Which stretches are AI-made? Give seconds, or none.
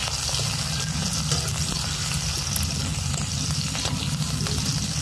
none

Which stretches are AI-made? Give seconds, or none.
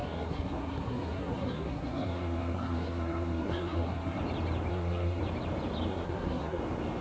0.0-4.2; 4.7-5.2; 5.9-6.6